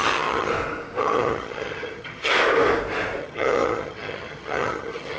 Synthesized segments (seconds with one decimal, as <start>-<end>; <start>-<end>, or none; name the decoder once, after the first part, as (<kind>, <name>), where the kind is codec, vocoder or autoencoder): 0.0-0.5 (vocoder, HiFi-GAN); 1.0-2.3; 3.2-5.2